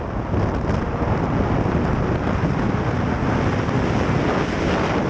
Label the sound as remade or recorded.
recorded